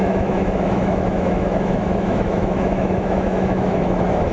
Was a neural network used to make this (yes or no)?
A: yes